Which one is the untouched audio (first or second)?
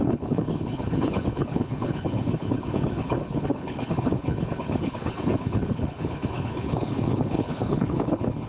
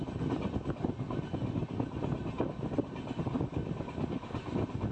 second